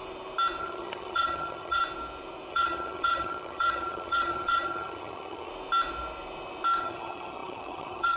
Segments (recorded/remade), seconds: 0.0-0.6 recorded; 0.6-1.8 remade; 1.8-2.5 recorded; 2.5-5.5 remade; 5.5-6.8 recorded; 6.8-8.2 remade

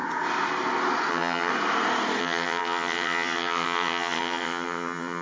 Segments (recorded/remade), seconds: 0.0-1.1 recorded; 1.1-1.5 remade; 1.5-2.2 recorded; 2.2-5.2 remade

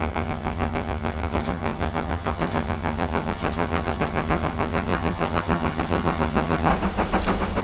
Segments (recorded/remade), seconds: 0.0-6.7 remade; 6.7-7.6 recorded

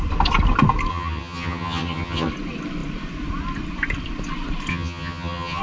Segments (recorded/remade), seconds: 0.0-0.9 recorded; 0.9-2.3 remade; 2.3-4.7 recorded; 4.7-5.6 remade

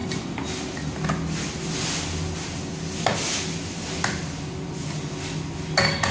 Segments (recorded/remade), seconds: 0.0-6.1 recorded

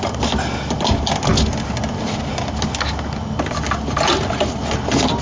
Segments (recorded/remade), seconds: 0.0-5.2 recorded

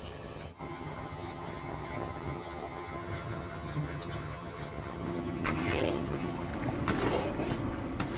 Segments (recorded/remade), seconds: 0.0-6.5 remade; 6.5-8.2 recorded

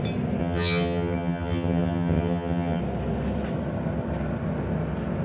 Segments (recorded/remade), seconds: 0.0-0.4 recorded; 0.4-2.8 remade; 2.8-5.2 recorded